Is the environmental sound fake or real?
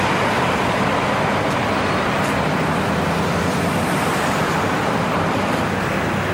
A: real